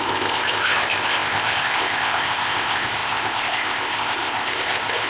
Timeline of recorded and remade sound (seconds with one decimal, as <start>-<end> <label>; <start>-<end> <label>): 0.0-5.1 remade

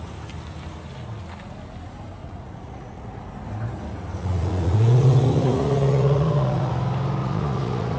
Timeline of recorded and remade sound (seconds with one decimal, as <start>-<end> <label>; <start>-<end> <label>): 0.0-2.2 recorded; 2.2-3.2 remade; 3.2-4.2 recorded; 4.2-6.7 remade; 6.7-7.2 recorded; 7.2-8.0 remade